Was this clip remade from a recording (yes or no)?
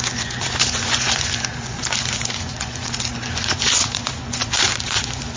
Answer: yes